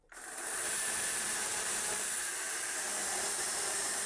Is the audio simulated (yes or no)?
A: yes